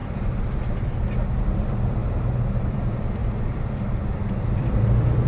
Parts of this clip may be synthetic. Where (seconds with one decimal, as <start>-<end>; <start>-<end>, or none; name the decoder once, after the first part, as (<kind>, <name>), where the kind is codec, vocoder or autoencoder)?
0.0-2.0 (vocoder, BigVGAN v2); 2.6-5.3